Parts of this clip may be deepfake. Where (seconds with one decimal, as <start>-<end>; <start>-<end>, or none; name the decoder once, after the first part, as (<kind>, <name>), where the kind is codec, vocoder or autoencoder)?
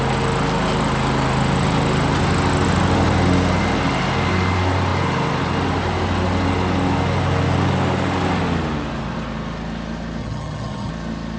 10.2-10.9 (vocoder, HiFi-GAN)